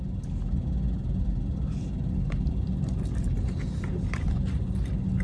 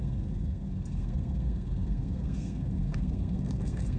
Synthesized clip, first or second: second